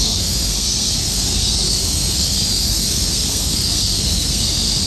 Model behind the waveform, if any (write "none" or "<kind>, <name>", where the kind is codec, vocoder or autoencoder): codec, SNAC